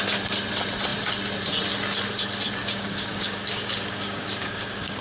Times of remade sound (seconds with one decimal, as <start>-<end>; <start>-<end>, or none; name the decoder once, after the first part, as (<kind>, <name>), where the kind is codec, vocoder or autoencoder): 2.6-5.0 (codec, DAC)